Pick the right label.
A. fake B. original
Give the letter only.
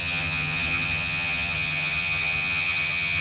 A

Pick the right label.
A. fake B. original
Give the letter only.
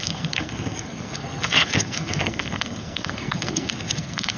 A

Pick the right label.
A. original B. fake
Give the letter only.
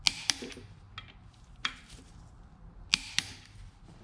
A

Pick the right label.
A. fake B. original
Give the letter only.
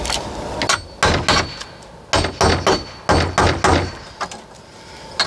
B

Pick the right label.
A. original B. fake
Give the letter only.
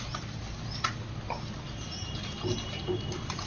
A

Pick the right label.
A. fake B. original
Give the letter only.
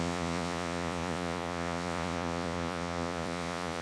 A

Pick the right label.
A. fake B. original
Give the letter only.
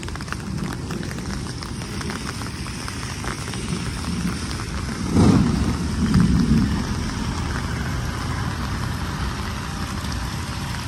B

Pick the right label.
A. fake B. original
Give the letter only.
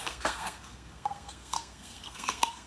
A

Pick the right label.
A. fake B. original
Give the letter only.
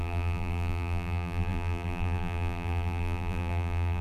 A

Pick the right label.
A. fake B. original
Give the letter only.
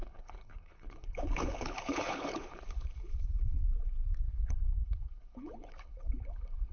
A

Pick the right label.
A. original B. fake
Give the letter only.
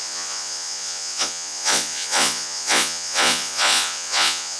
B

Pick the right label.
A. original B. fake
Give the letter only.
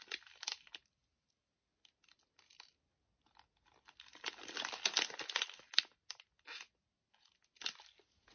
A